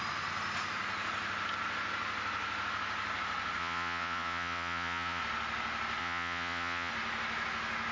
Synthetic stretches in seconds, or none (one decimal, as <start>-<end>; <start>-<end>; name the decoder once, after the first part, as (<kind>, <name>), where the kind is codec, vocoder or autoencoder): 3.6-5.2 (vocoder, Vocos); 6.0-6.9